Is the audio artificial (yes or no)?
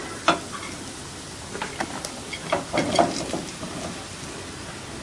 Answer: no